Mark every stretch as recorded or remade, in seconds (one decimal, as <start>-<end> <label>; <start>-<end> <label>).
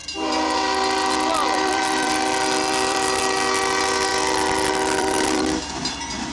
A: 0.0-3.2 remade; 3.2-4.1 recorded; 4.1-5.6 remade; 5.6-6.3 recorded